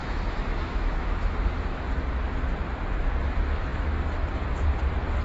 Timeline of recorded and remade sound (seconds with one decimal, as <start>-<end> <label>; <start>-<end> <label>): 0.0-1.8 remade; 1.8-5.2 recorded